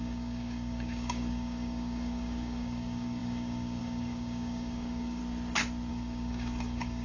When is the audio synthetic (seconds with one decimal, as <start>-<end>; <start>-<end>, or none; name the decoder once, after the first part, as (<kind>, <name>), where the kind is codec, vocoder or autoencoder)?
0.0-5.2 (codec, DAC); 5.9-7.0

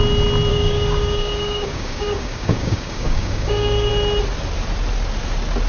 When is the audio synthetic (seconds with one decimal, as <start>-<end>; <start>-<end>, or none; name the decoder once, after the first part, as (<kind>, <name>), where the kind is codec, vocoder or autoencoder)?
0.5-3.9 (codec, DAC)

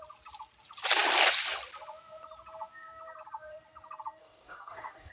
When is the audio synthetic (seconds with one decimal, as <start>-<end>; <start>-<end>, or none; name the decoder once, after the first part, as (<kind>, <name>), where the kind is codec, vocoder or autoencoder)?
4.2-5.1 (codec, DAC)